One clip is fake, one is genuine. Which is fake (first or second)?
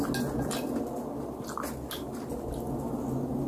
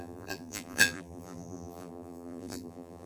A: second